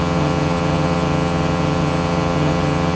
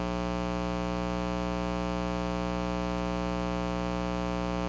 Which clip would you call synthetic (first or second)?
first